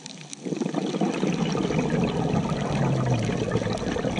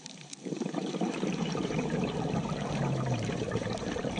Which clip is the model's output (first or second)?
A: second